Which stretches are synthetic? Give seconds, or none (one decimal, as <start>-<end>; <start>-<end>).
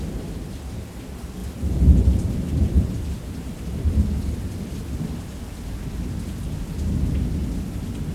1.4-5.7